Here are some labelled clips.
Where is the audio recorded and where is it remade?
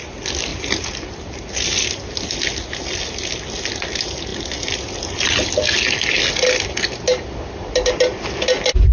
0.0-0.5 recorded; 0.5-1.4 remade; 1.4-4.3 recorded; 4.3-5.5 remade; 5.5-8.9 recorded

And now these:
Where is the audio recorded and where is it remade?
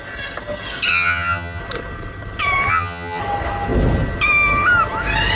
0.0-0.9 recorded; 0.9-1.6 remade; 1.6-2.7 recorded; 2.7-3.2 remade; 3.2-5.4 recorded